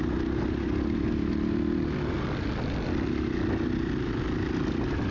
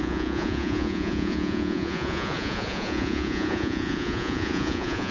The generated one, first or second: second